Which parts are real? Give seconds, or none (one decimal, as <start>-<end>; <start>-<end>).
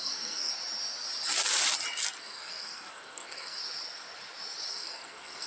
0.5-2.2; 3.6-4.7